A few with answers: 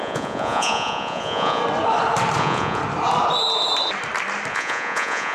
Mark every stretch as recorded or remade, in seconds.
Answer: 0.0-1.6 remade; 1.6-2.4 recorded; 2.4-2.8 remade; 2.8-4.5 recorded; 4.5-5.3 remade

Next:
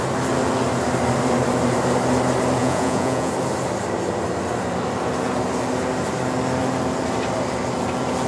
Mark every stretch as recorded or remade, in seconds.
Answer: 0.0-2.6 recorded; 2.6-3.3 remade; 3.3-8.3 recorded

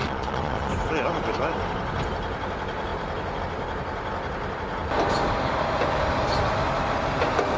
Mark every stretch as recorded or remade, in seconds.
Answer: 0.0-0.7 remade; 0.7-7.6 recorded

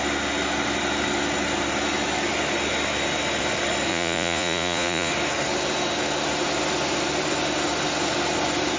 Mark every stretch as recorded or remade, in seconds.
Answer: 0.0-3.9 recorded; 3.9-5.1 remade; 5.1-8.8 recorded

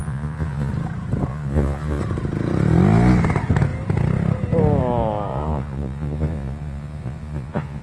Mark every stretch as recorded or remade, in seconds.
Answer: 0.0-0.7 remade; 0.7-1.3 recorded; 1.3-2.0 remade; 2.0-5.3 recorded; 5.3-7.8 remade

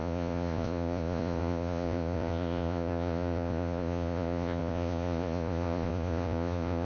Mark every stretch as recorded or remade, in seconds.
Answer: 0.0-6.8 remade

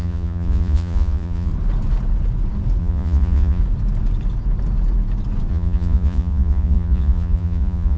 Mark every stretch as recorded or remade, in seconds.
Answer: 0.0-1.5 remade; 1.5-2.8 recorded; 2.8-3.6 remade; 3.6-5.5 recorded; 5.5-8.0 remade

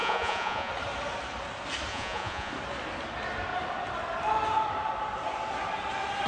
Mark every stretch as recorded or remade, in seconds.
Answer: 0.0-0.7 remade; 0.7-1.9 recorded; 1.9-2.5 remade; 2.5-6.3 recorded